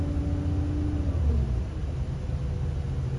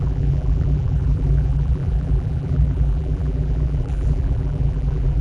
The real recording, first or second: first